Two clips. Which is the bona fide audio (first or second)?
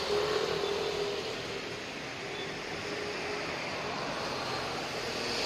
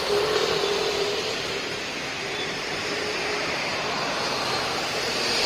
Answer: first